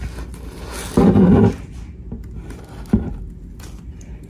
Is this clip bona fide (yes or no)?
yes